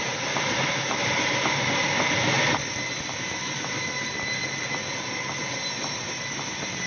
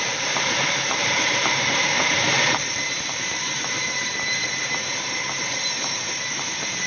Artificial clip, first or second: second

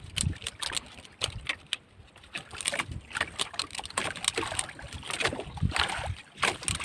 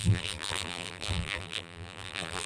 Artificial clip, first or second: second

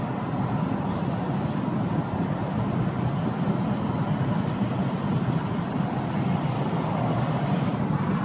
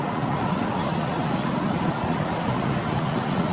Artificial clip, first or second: second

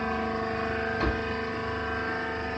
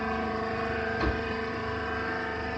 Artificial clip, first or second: second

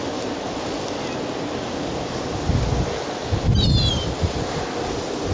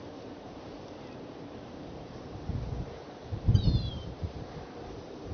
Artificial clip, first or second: second